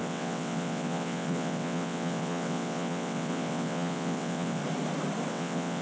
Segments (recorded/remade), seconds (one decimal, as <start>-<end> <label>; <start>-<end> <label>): 0.0-4.6 remade; 4.6-5.3 recorded; 5.3-5.8 remade